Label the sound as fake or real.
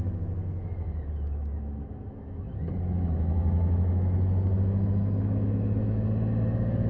fake